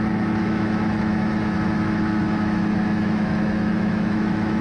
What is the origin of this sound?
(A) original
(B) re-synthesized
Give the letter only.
B